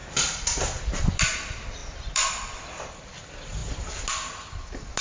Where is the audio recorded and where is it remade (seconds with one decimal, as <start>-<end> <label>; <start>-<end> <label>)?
0.0-0.8 remade; 0.8-1.8 recorded; 1.8-3.2 remade; 3.2-5.0 recorded